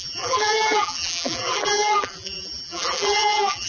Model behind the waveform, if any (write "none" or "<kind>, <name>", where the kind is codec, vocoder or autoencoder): vocoder, BigVGAN v2